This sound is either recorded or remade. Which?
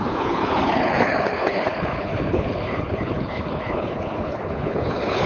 remade